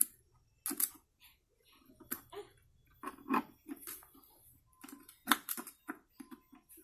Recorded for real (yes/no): yes